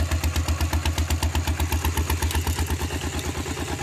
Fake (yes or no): no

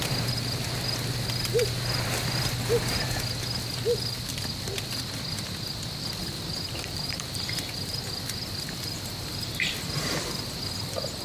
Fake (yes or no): no